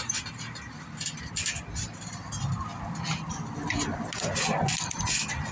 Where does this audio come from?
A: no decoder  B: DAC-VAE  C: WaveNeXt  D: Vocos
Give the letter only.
A